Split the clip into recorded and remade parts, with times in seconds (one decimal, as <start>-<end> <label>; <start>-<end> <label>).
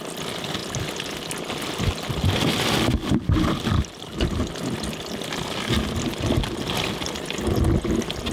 0.0-8.3 recorded